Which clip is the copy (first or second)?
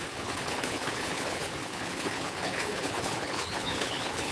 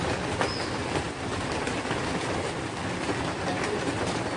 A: first